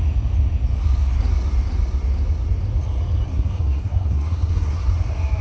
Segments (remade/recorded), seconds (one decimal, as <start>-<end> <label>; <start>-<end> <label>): 0.0-3.3 recorded; 3.3-4.9 remade; 4.9-5.4 recorded